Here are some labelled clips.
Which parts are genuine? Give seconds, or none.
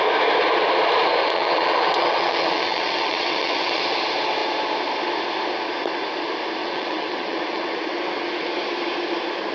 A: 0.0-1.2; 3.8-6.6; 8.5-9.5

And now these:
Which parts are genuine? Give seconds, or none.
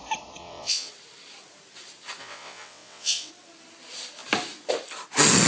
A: 0.0-0.4; 0.9-2.2; 3.3-5.5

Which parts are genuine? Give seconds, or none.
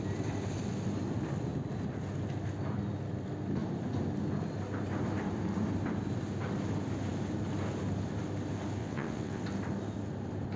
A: 0.0-8.8; 9.4-10.6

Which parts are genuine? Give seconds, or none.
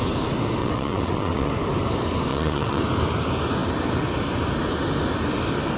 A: 0.0-0.6; 1.5-2.3; 2.8-5.8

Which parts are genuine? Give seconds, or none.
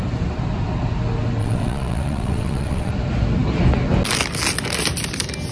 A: 0.0-1.4; 2.9-5.5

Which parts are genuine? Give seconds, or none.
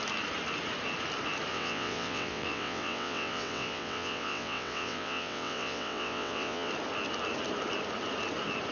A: 0.0-1.5; 6.7-8.7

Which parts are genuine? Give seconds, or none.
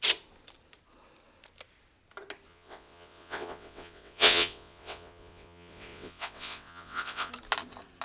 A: 0.0-2.5; 7.3-8.0